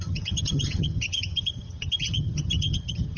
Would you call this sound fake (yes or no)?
yes